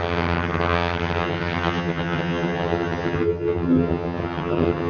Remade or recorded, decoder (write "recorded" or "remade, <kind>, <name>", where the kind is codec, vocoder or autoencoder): remade, vocoder, HiFi-GAN